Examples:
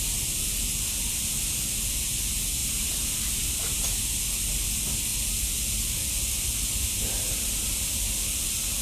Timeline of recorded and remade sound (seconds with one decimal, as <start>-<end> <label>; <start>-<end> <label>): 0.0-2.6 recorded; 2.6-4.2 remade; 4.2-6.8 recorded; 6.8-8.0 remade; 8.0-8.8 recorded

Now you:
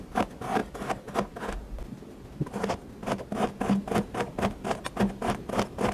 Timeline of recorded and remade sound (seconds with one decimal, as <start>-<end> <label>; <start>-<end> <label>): 0.0-5.9 recorded

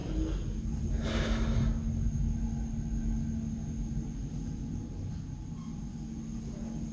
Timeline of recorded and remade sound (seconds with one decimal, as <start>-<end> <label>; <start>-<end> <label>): 0.0-6.9 recorded

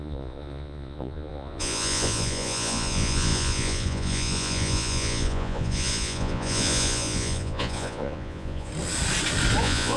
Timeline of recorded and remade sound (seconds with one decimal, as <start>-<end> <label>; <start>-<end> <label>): 0.0-8.7 remade; 8.7-9.6 recorded; 9.6-10.0 remade

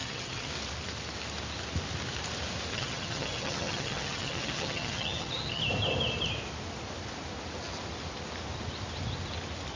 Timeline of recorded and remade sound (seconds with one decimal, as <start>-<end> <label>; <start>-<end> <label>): 0.0-0.5 remade; 0.5-2.7 recorded; 2.7-5.6 remade; 5.6-9.8 recorded

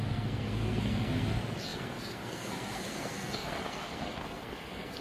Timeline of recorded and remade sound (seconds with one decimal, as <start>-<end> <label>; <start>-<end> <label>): 0.0-5.0 remade

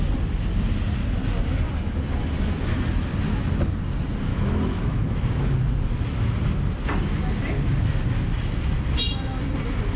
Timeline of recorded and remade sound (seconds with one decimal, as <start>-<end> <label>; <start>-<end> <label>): 0.0-4.3 recorded; 4.3-5.3 remade; 5.3-10.0 recorded